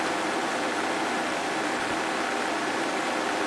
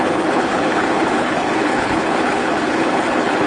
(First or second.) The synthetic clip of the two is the second